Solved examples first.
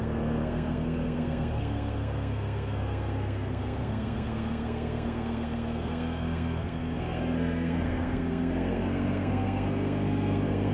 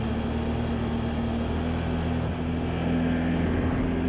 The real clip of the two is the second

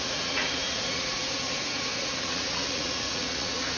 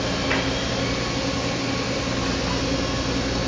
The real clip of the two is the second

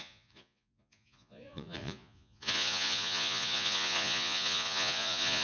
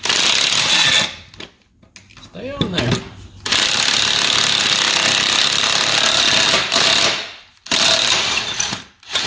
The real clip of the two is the second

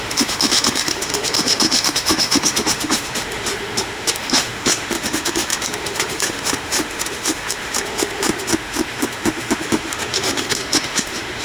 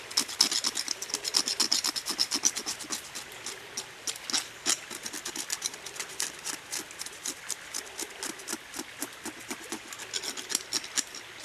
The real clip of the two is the second